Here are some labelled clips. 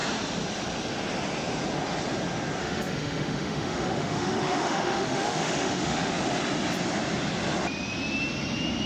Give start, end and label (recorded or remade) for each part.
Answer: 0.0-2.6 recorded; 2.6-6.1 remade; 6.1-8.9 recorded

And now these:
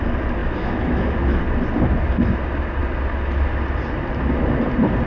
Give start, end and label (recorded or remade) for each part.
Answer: 0.0-0.4 recorded; 0.4-1.4 remade; 1.4-5.1 recorded

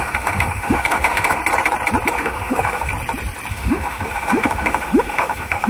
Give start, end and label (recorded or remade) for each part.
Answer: 0.0-1.4 remade; 1.4-2.1 recorded; 2.1-2.9 remade; 2.9-3.5 recorded; 3.5-5.7 remade

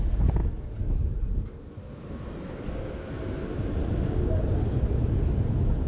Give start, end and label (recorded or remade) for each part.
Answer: 0.0-5.9 recorded

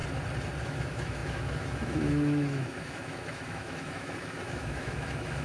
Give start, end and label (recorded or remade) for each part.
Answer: 0.0-0.6 recorded; 0.6-5.4 remade

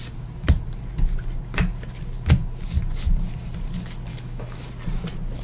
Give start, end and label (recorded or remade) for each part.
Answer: 0.0-4.1 recorded; 4.1-4.7 remade; 4.7-5.4 recorded